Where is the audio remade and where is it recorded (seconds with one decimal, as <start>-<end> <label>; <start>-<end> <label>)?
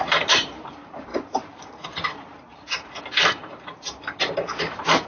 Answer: 0.0-5.1 remade